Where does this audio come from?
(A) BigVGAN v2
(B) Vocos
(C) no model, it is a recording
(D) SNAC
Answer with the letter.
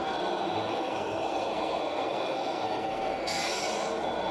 D